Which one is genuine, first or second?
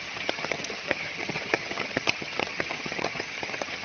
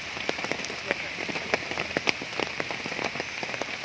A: second